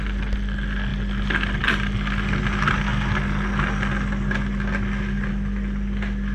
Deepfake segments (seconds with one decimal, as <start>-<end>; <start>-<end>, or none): none

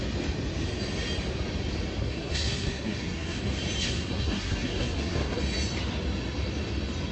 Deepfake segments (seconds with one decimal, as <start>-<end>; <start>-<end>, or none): 2.0-3.4; 3.8-5.4

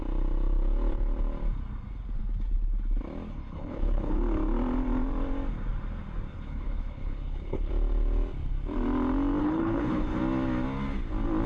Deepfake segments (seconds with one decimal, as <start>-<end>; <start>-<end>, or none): 3.3-4.2; 6.3-7.7; 9.4-10.2

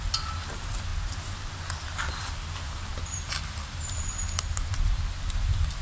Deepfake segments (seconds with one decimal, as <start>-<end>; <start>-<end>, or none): none